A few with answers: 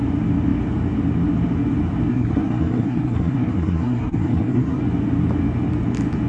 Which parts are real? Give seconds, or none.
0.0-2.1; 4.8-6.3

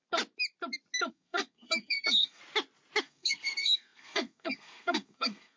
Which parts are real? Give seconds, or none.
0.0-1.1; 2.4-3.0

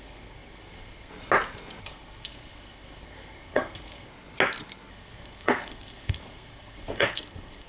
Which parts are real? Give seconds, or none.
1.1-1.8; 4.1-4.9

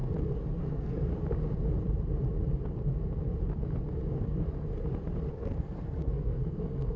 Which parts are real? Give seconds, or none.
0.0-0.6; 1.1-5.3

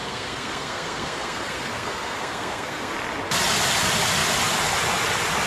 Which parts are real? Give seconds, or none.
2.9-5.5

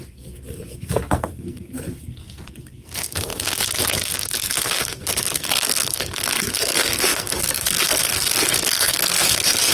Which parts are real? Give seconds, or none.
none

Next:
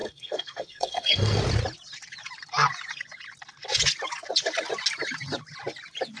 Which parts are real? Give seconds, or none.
1.4-6.2

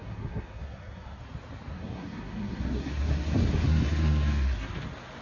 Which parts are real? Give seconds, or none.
1.2-1.7; 4.7-5.2